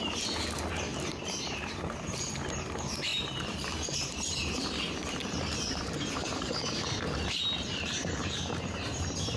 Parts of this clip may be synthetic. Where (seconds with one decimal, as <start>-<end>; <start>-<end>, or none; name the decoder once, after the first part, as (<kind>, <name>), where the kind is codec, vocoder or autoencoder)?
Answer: 0.9-1.7 (vocoder, BigVGAN v2); 3.1-8.1